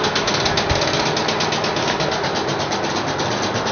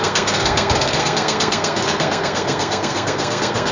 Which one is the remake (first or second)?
second